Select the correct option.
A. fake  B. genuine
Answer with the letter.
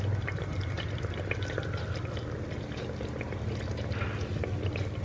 B